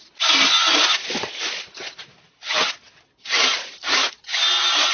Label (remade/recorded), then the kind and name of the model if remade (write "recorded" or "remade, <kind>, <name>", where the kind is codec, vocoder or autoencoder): recorded